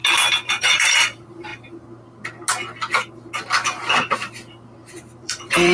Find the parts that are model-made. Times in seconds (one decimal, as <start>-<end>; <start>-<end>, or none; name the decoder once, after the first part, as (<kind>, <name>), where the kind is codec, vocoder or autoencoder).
0.6-1.5 (vocoder, BigVGAN v2); 4.9-5.7